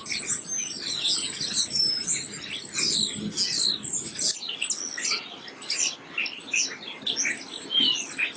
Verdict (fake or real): real